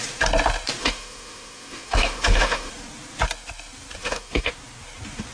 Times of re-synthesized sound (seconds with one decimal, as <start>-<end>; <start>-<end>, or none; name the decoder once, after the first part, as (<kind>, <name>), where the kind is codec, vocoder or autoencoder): 0.8-2.7 (autoencoder, DAC-VAE); 4.0-4.5